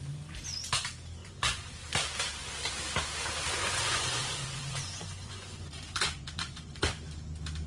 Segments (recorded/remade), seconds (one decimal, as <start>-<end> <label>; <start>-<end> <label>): 0.0-1.2 recorded; 1.2-1.7 remade; 1.7-3.6 recorded; 3.6-6.8 remade; 6.8-7.7 recorded